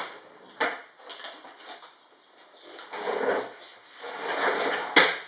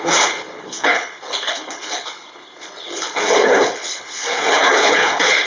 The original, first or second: first